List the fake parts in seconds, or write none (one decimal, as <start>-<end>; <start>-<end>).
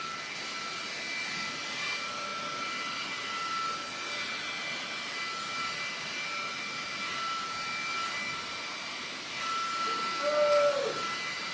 none